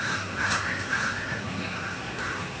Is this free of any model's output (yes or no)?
no